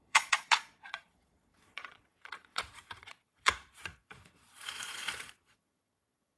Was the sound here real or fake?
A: fake